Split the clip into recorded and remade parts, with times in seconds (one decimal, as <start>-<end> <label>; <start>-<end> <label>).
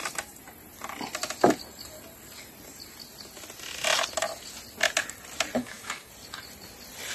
0.0-5.6 recorded; 5.6-6.1 remade; 6.1-7.1 recorded